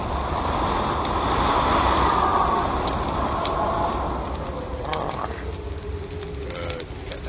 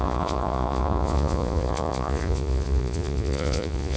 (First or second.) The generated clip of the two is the second